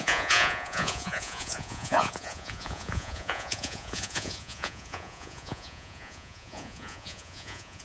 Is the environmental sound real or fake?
fake